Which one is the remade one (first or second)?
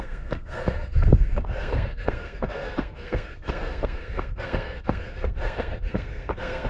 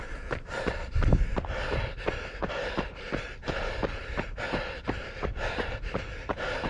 first